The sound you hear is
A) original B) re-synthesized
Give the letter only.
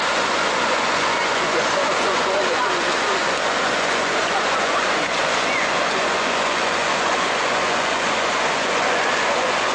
B